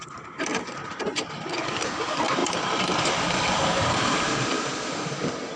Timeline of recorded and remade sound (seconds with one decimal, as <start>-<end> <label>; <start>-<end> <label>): 0.0-0.5 remade; 0.5-1.5 recorded; 1.5-2.4 remade; 2.4-3.0 recorded; 3.0-5.6 remade

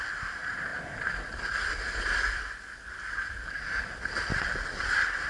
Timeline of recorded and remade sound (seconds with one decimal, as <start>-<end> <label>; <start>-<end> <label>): 0.0-5.3 recorded

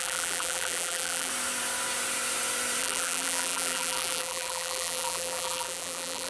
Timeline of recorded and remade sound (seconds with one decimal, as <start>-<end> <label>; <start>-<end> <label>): 0.0-1.3 remade; 1.3-2.8 recorded; 2.8-6.3 remade

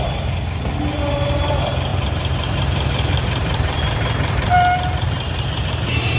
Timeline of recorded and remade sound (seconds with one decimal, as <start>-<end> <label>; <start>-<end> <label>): 0.0-1.9 recorded; 1.9-5.6 remade; 5.6-6.2 recorded

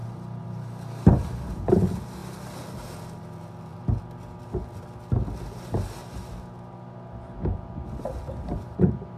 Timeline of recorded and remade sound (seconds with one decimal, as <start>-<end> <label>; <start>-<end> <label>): 0.0-1.7 remade; 1.7-6.0 recorded; 6.0-9.2 remade

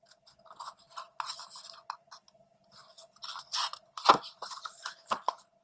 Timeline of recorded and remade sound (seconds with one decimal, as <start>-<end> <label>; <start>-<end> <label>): 0.0-2.8 recorded; 2.8-3.6 remade; 3.6-5.6 recorded

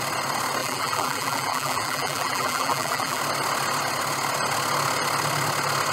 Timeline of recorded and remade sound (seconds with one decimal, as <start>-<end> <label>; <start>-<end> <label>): 0.0-0.6 recorded; 0.6-3.2 remade; 3.2-5.9 recorded